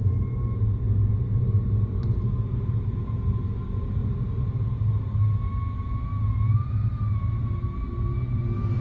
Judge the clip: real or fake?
real